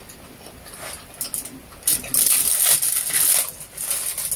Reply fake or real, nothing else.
real